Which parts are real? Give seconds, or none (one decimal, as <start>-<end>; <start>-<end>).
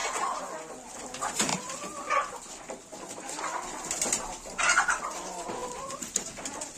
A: 0.0-6.8